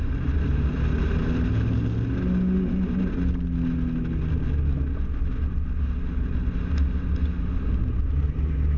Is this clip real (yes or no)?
yes